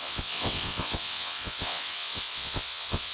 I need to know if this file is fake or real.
fake